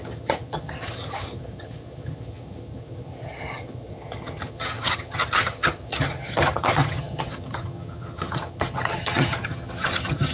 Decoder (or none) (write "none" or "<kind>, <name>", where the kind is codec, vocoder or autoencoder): vocoder, HiFi-GAN